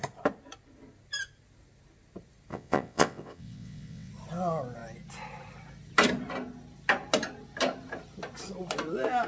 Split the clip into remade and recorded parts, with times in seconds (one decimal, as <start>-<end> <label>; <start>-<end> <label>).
0.0-2.5 recorded; 2.5-4.1 remade; 4.1-9.3 recorded